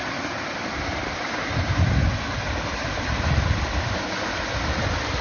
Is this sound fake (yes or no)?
no